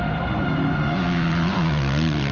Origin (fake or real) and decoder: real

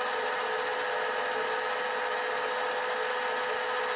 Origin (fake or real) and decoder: real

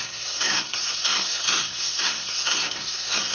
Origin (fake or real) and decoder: fake, codec, SNAC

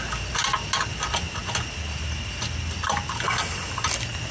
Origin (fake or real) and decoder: real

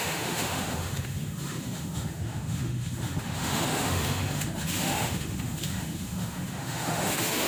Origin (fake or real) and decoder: fake, autoencoder, DAC-VAE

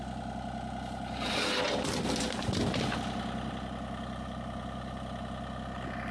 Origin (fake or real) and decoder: real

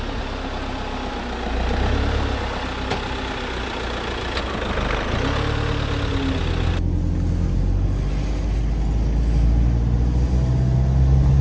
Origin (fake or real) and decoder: real